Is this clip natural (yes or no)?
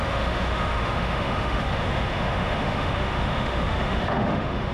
no